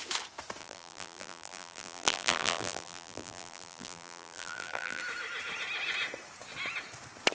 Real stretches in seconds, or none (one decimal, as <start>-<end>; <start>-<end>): 0.0-0.6; 5.0-7.3